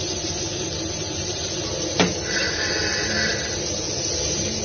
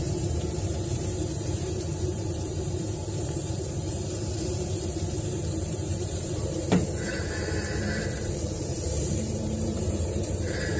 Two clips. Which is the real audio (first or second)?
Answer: first